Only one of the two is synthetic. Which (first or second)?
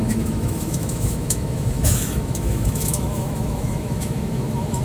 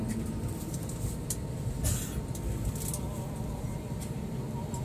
first